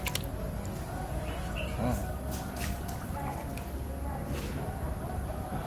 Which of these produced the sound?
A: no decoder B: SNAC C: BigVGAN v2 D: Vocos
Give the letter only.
A